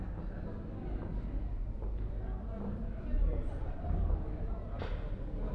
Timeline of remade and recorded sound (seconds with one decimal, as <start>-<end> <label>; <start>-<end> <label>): 0.0-5.5 recorded

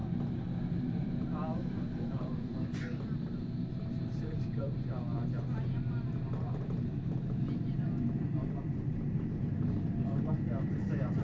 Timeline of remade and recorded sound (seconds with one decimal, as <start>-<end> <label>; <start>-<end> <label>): 0.0-0.7 recorded; 0.7-2.5 remade; 2.5-3.4 recorded; 3.4-5.1 remade; 5.1-7.2 recorded; 7.2-11.2 remade

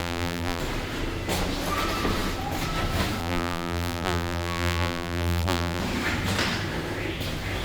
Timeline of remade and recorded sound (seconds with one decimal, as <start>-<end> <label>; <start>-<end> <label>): 0.0-0.6 remade; 0.6-3.2 recorded; 3.2-5.8 remade; 5.8-7.6 recorded

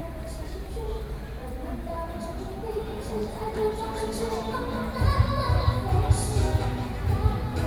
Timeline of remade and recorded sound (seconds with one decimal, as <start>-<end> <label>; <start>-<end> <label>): 0.0-0.7 remade; 0.7-1.4 recorded; 1.4-4.6 remade; 4.6-7.7 recorded

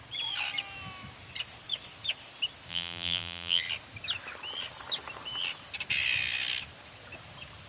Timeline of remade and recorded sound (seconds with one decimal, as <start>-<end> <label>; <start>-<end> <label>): 0.0-2.7 recorded; 2.7-3.6 remade; 3.6-7.7 recorded

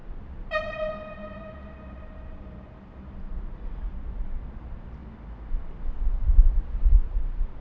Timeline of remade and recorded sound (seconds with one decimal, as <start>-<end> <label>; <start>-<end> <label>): 0.0-5.0 remade; 5.0-7.0 recorded; 7.0-7.6 remade